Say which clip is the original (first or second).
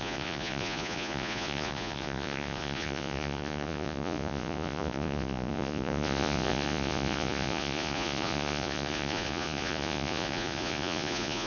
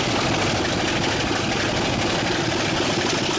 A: second